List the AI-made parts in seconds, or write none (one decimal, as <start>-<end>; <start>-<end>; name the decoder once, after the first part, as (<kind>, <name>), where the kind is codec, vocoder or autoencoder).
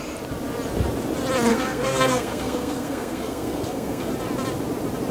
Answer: 1.5-4.1 (codec, SNAC)